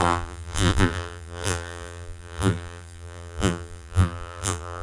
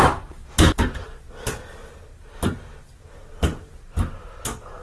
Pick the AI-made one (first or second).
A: first